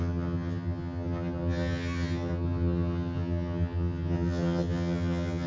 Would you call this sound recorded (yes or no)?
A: no